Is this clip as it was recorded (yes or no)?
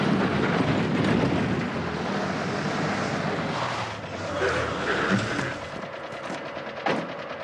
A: yes